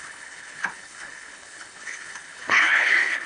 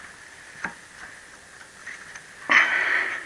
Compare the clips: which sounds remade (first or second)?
first